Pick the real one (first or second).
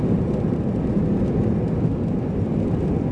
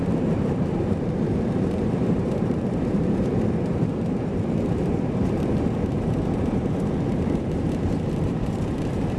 first